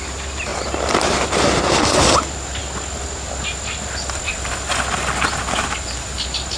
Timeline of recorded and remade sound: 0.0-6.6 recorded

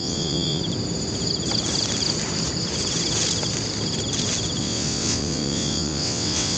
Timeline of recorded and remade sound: 0.0-0.6 remade; 0.6-4.6 recorded; 4.6-6.6 remade

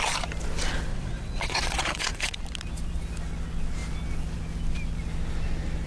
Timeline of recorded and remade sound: 0.0-0.9 recorded; 0.9-2.4 remade; 2.4-5.9 recorded

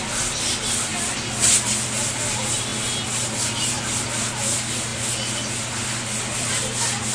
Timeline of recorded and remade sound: 0.0-7.1 recorded

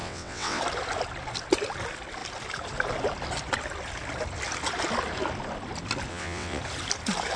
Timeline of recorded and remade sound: 0.0-0.6 remade; 0.6-6.1 recorded; 6.1-6.6 remade; 6.6-7.4 recorded

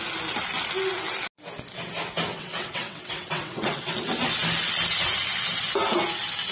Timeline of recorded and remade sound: 0.0-2.3 recorded; 2.3-3.9 remade; 3.9-6.5 recorded

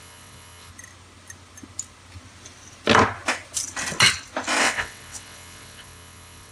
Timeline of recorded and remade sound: 0.0-0.7 remade; 0.7-4.6 recorded; 4.6-6.5 remade

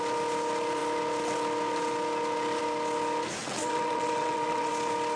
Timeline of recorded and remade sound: 0.0-3.4 recorded; 3.4-4.7 remade; 4.7-5.2 recorded